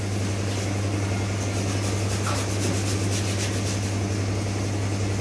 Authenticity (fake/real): real